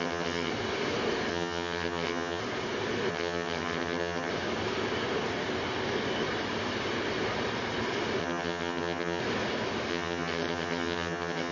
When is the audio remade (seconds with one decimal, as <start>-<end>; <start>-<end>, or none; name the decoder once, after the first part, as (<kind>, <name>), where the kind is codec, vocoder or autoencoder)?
0.0-0.5 (vocoder, HiFi-GAN); 1.3-2.4; 3.1-4.3; 8.2-9.2; 9.9-11.5